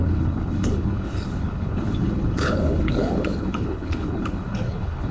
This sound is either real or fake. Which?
fake